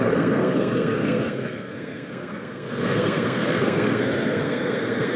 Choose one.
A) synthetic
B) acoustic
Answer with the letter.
A